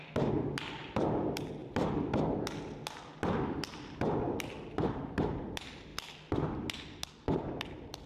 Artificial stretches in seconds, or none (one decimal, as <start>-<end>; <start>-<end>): none